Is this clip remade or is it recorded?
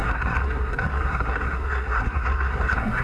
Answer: remade